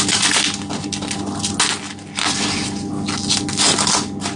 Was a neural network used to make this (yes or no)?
no